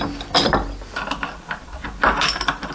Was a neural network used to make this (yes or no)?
no